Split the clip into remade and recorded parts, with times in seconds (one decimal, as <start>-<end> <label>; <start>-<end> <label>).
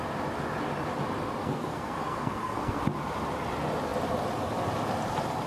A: 0.0-1.4 recorded; 1.4-2.8 remade; 2.8-5.5 recorded